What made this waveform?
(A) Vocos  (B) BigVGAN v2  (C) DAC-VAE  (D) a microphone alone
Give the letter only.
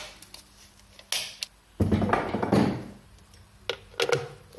D